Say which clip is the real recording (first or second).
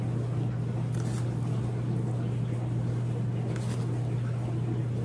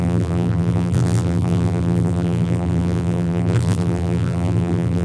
first